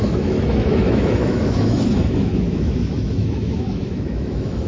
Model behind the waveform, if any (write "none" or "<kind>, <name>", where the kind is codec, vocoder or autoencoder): autoencoder, DAC-VAE